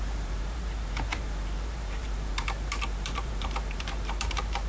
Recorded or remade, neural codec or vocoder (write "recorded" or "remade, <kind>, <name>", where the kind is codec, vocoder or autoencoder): remade, vocoder, BigVGAN v2